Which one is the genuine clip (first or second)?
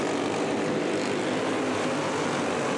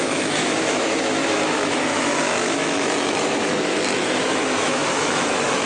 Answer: first